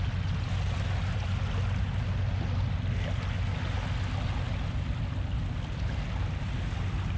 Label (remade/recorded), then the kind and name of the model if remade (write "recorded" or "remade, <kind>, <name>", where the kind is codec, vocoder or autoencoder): recorded